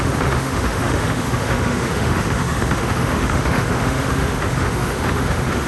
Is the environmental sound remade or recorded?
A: remade